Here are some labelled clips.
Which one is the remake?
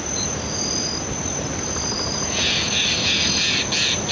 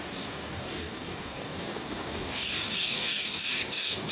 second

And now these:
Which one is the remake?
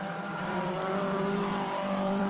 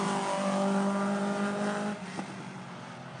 first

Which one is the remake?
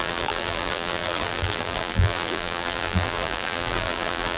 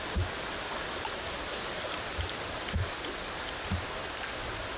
first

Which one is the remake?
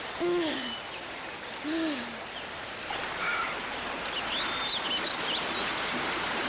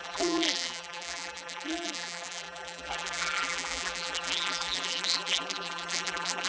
second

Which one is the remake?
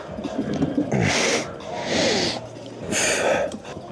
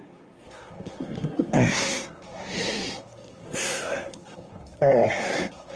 second